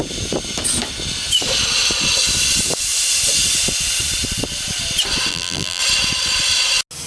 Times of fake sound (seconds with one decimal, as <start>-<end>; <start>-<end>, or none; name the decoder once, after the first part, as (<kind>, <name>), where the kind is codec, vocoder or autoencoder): 5.3-5.8 (vocoder, BigVGAN v2)